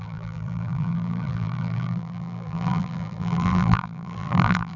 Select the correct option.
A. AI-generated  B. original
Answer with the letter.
A